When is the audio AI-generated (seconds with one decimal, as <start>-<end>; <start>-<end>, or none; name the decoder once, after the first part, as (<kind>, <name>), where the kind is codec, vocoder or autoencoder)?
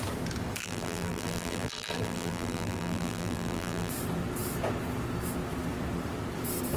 0.6-3.9 (vocoder, BigVGAN v2)